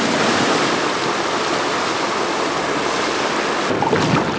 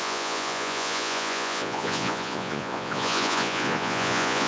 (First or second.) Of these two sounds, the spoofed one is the second